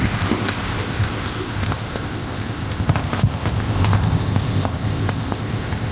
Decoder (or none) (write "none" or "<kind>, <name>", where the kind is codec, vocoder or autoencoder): codec, ZipCodec